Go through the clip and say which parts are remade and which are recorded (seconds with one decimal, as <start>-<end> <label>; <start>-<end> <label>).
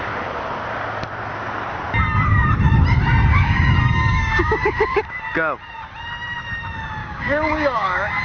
0.0-3.3 recorded; 3.3-5.2 remade; 5.2-7.0 recorded; 7.0-8.2 remade